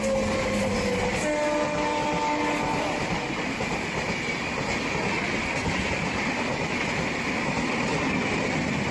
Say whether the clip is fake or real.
real